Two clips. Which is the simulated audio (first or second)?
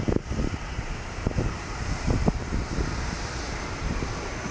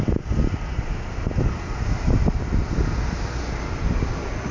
first